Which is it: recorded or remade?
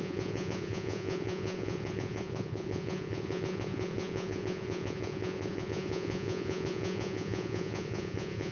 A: remade